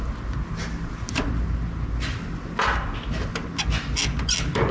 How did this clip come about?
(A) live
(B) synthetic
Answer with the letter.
A